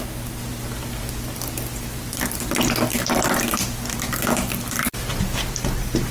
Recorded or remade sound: recorded